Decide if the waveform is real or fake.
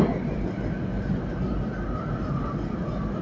real